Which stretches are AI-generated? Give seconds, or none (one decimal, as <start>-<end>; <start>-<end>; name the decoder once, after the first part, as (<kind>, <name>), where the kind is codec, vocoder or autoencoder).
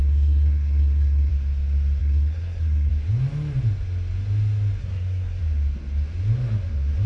0.0-1.3 (codec, SNAC); 2.0-2.9; 4.8-5.4